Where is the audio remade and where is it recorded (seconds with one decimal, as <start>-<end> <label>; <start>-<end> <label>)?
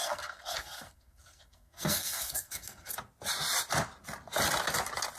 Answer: 0.0-2.9 remade; 2.9-5.2 recorded